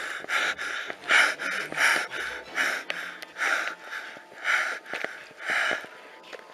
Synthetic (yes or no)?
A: no